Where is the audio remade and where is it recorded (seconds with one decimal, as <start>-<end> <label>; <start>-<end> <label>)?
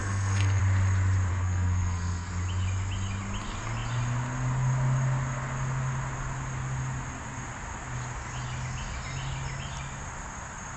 0.0-0.6 remade; 0.6-1.3 recorded; 1.3-2.3 remade; 2.3-10.8 recorded